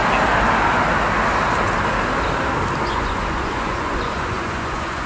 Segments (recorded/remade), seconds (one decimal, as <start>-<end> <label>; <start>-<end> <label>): 0.0-2.8 recorded; 2.8-5.1 remade

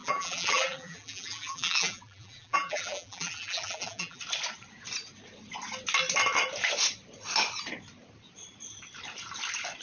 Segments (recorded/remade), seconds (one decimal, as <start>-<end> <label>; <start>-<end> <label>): 0.0-4.2 remade; 4.2-9.8 recorded

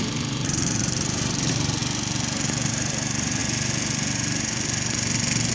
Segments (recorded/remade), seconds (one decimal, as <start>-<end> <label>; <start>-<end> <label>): 0.0-1.8 remade; 1.8-2.7 recorded; 2.7-3.4 remade; 3.4-5.5 recorded